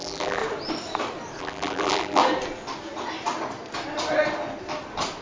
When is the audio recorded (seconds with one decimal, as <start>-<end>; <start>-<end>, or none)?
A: 0.4-1.4; 2.2-5.2